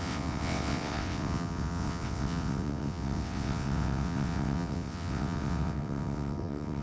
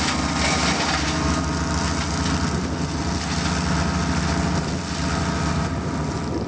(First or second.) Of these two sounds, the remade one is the first